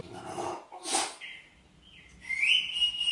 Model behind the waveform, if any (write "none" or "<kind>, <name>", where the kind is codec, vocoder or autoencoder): none